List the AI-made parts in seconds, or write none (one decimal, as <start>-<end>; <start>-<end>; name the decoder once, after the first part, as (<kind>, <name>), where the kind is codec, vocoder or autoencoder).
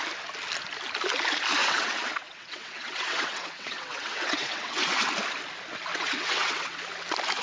1.6-5.0 (vocoder, WaveNeXt); 5.9-6.8